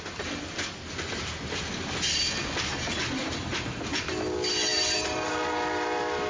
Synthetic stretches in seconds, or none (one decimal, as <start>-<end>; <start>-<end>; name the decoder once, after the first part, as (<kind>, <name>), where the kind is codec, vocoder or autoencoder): 3.2-4.1 (vocoder, BigVGAN v2); 4.7-5.3